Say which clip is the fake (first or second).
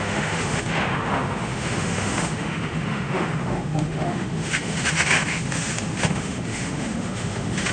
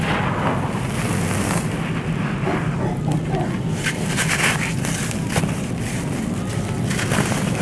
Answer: first